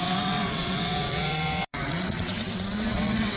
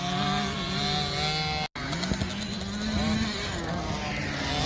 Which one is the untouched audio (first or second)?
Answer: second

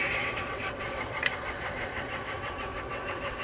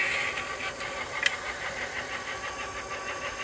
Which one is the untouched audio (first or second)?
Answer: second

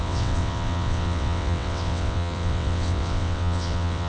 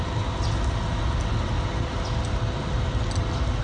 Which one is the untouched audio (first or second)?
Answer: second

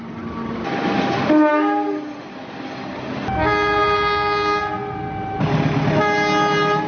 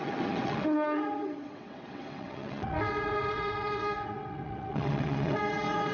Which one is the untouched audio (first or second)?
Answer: first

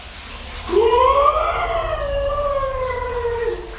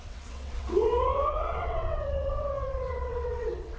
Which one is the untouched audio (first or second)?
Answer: first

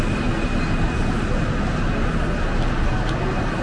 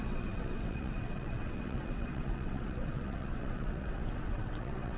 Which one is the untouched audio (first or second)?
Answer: first